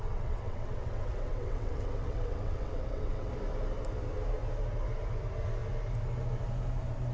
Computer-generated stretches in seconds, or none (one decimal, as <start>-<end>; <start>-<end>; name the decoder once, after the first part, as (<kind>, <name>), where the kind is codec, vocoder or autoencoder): 0.0-3.3 (vocoder, WaveNeXt)